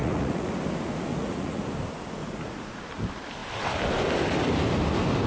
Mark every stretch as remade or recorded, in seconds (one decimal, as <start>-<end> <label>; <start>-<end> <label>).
0.0-0.5 remade; 0.5-1.1 recorded; 1.1-1.6 remade; 1.6-2.2 recorded; 2.2-2.8 remade; 2.8-5.3 recorded